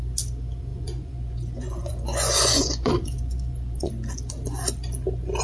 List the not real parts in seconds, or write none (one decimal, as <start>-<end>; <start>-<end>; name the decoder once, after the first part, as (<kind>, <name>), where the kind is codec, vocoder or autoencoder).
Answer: 0.7-3.9 (vocoder, Vocos)